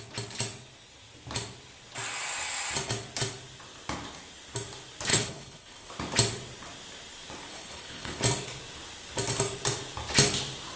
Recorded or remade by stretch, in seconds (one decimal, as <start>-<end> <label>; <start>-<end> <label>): 0.0-5.1 recorded; 5.1-5.9 remade; 5.9-7.5 recorded; 7.5-8.2 remade; 8.2-10.8 recorded